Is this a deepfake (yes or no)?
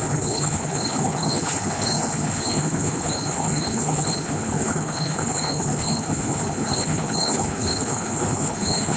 yes